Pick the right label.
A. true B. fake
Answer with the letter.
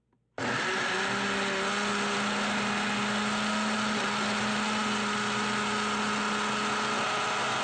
A